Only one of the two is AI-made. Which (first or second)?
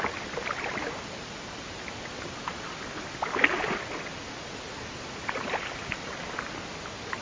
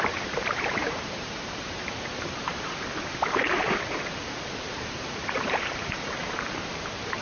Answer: second